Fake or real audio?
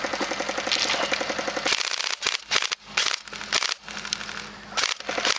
real